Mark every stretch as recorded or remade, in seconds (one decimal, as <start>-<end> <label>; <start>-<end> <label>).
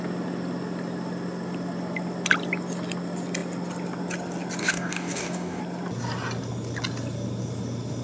0.0-4.6 recorded; 4.6-5.6 remade; 5.6-8.0 recorded